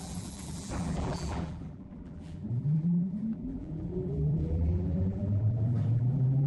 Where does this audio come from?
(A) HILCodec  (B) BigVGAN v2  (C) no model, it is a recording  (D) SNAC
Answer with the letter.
B